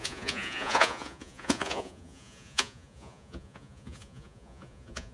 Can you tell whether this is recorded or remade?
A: remade